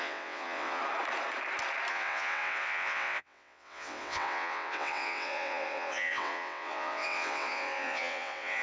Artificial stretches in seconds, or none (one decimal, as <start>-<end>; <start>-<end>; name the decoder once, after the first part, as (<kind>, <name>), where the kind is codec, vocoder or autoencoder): 0.0-0.8 (vocoder, WaveNeXt); 1.9-8.6

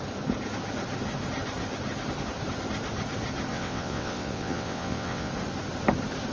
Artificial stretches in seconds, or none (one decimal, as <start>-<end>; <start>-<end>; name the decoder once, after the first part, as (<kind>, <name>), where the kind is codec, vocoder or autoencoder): 3.5-5.3 (vocoder, WaveNeXt)

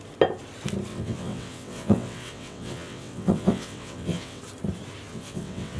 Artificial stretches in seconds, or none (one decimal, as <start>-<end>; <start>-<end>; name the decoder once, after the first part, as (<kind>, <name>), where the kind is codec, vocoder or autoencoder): 0.9-4.4 (vocoder, WaveNeXt); 5.1-5.8

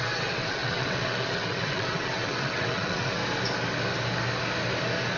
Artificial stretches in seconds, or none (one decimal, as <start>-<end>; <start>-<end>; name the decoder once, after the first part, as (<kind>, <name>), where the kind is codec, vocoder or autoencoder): 0.0-3.2 (vocoder, WaveNeXt)

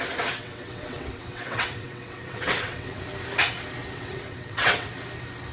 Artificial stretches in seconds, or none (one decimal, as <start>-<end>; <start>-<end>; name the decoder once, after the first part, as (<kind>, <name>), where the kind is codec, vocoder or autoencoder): 0.4-3.0 (vocoder, WaveNeXt); 3.8-4.9